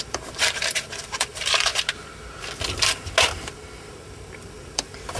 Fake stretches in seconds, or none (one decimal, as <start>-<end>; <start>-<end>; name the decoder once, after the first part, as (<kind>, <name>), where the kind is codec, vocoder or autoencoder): 0.0-1.7 (vocoder, BigVGAN v2); 3.8-5.2